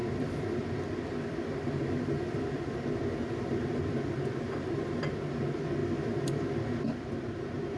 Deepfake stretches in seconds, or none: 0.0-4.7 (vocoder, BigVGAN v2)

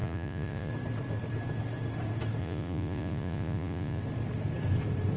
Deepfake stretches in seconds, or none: 0.0-0.7 (vocoder, Vocos); 2.4-4.0

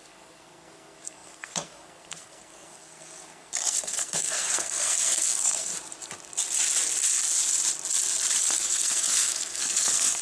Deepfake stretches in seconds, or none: 0.0-5.7 (codec, SNAC); 8.4-10.2

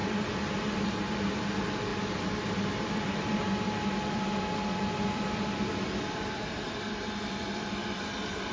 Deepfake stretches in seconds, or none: 1.9-6.8 (vocoder, BigVGAN v2); 7.8-8.5

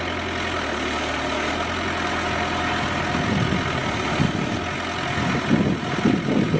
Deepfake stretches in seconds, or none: none

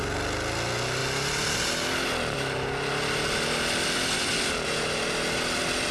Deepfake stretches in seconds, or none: none